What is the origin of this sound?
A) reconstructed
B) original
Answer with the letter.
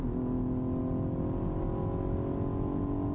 B